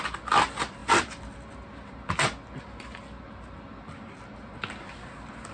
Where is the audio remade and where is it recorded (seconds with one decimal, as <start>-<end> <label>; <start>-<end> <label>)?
0.0-5.5 recorded